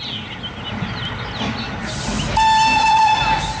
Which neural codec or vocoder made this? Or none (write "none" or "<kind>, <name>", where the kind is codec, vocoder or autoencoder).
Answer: none